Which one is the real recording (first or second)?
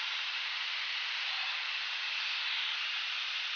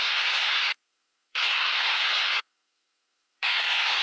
first